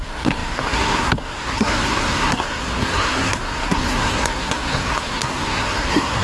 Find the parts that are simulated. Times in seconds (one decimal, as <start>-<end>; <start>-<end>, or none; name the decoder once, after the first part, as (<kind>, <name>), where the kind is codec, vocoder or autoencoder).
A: 0.0-6.2 (codec, SNAC)